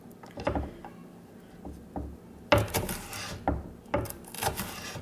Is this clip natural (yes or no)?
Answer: yes